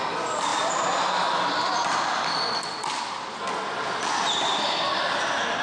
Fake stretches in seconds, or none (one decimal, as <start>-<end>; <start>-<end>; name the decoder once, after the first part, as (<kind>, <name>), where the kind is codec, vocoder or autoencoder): none

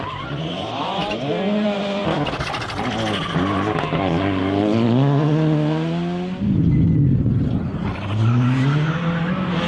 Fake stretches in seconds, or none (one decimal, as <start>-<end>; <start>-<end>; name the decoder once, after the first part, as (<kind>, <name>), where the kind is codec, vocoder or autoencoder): none

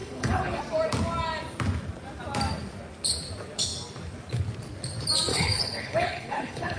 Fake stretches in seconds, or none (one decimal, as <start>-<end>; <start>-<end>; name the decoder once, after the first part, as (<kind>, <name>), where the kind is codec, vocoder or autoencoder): 0.0-0.6 (codec, HILCodec); 5.3-6.8

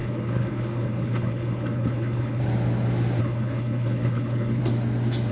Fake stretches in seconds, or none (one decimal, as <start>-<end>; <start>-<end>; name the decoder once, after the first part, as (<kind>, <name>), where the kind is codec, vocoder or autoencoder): 0.0-2.4 (codec, HILCodec); 3.2-4.6

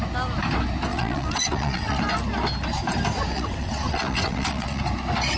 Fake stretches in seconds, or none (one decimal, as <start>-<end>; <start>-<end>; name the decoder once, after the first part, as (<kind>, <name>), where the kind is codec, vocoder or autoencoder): 0.9-2.0 (vocoder, WaveNeXt); 3.3-4.8